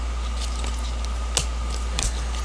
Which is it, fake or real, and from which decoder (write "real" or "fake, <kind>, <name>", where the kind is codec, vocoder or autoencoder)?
real